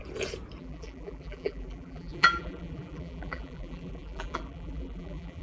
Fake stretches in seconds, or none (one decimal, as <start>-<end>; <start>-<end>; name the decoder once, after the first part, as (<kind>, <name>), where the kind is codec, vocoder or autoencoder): 0.6-5.4 (vocoder, BigVGAN v2)